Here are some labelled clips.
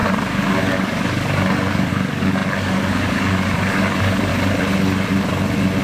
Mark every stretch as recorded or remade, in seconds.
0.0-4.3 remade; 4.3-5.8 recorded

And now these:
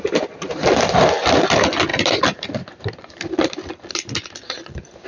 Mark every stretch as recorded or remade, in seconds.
0.0-5.1 recorded

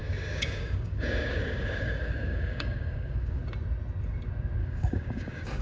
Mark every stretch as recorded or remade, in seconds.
0.0-3.4 remade; 3.4-4.6 recorded; 4.6-5.6 remade